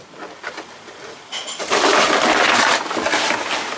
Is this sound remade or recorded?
recorded